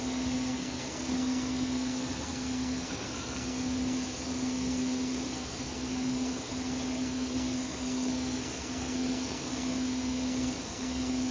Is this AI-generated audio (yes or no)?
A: yes